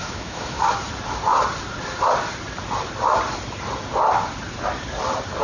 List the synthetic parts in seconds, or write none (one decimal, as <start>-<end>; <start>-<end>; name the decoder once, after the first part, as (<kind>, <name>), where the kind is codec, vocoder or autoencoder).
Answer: 0.0-0.6 (autoencoder, DAC-VAE)